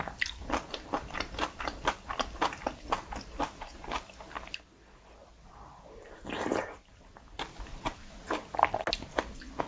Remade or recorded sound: recorded